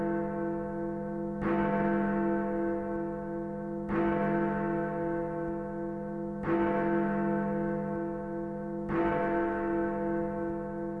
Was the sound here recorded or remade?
recorded